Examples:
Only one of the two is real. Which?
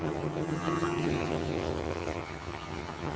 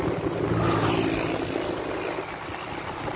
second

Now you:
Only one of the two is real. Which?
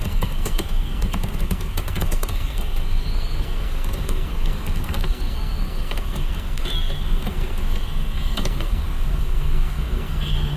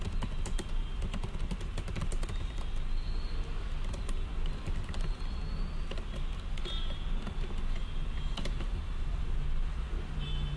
second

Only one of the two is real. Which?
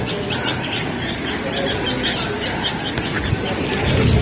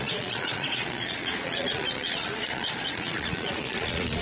first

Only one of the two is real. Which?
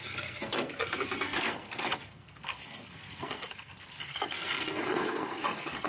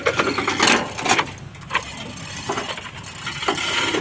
second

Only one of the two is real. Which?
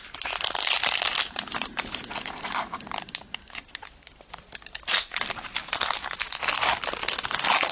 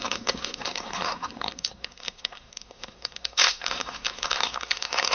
first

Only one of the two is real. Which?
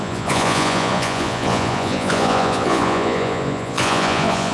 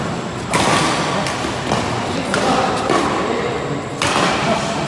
second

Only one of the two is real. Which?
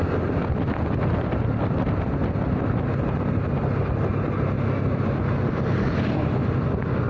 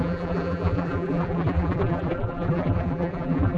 first